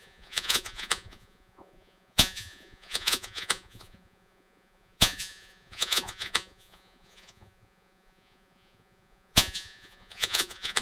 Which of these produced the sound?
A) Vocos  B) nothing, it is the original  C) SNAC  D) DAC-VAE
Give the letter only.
A